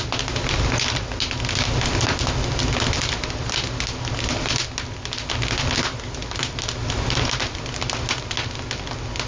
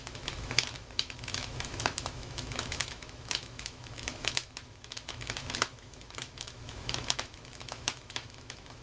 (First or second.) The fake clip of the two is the second